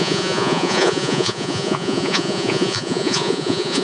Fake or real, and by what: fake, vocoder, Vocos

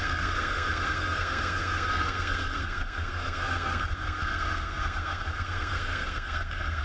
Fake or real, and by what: fake, codec, SNAC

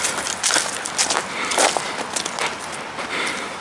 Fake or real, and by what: real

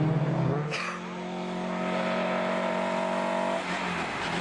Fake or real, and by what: real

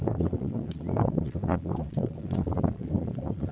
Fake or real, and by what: fake, vocoder, Vocos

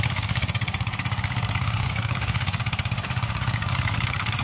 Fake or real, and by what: fake, codec, DAC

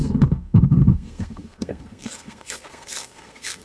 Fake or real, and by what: fake, codec, SNAC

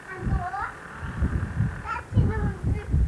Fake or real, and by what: real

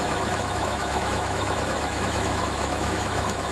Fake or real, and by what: fake, autoencoder, DAC-VAE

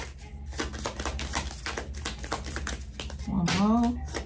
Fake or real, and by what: real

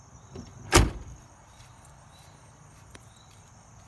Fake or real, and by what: fake, vocoder, BigVGAN v2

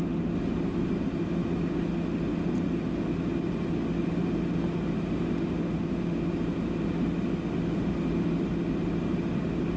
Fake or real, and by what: real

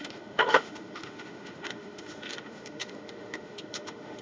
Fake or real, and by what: fake, autoencoder, DAC-VAE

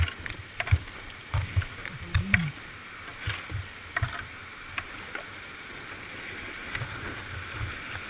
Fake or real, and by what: real